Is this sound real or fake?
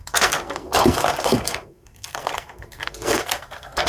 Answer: fake